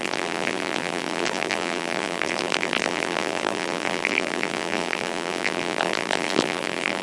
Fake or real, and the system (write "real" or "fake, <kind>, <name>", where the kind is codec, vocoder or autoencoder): fake, vocoder, BigVGAN v2